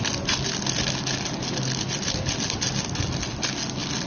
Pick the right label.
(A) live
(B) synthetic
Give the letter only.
A